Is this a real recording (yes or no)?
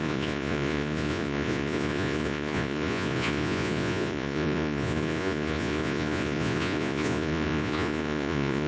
no